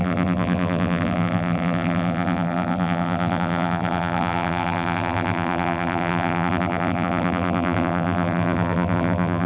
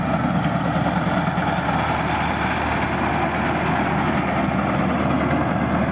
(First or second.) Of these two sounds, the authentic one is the second